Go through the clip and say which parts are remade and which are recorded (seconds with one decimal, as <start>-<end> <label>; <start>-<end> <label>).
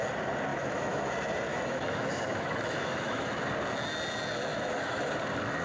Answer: 0.0-0.5 recorded; 0.5-1.1 remade; 1.1-1.5 recorded; 1.5-3.4 remade; 3.4-4.5 recorded; 4.5-5.1 remade; 5.1-5.6 recorded